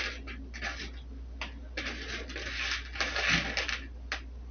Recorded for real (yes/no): yes